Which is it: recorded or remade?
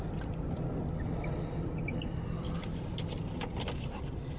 recorded